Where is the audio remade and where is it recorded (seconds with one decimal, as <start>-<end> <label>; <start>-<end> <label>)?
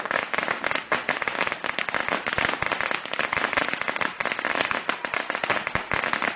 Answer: 0.0-6.4 recorded